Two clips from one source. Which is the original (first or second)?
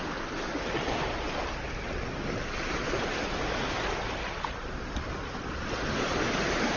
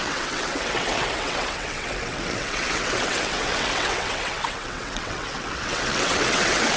first